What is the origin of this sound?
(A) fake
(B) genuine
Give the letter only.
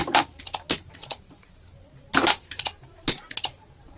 B